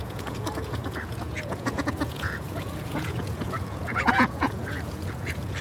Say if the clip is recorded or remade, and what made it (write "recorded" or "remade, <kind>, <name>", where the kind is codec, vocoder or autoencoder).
remade, vocoder, Vocos